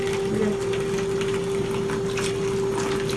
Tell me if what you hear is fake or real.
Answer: real